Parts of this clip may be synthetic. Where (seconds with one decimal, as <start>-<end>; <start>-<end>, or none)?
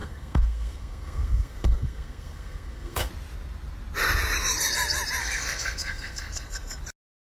0.0-3.1; 5.2-6.8